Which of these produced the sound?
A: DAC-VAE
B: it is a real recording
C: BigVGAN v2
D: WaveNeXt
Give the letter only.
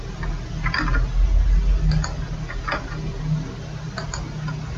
B